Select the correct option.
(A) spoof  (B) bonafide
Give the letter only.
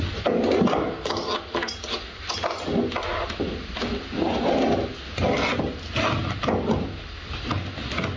B